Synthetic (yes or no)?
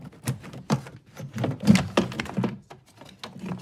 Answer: no